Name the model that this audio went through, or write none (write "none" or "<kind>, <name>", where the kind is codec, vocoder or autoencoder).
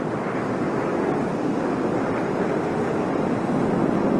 none